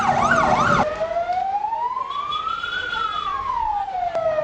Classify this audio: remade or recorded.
recorded